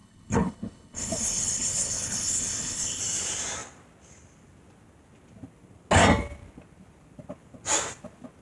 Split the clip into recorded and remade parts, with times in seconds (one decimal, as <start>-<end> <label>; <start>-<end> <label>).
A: 0.0-3.0 remade; 3.0-8.4 recorded